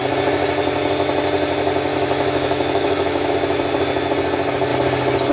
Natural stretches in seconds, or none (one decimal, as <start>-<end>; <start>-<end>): 0.0-1.9; 3.3-5.3

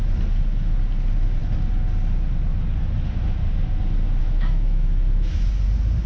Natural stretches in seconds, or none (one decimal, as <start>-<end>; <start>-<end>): 0.0-4.2; 5.5-6.1